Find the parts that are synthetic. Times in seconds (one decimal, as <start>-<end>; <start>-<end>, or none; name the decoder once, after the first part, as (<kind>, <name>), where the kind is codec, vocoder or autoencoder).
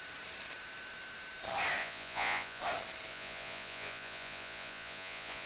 1.8-2.6 (vocoder, Vocos); 3.1-5.5